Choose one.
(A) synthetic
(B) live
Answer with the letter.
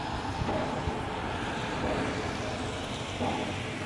B